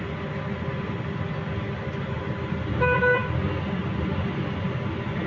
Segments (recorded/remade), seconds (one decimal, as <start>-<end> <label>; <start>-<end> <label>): 0.0-5.3 recorded